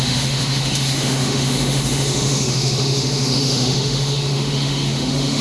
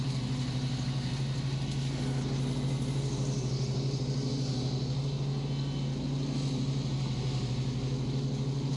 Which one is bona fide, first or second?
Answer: second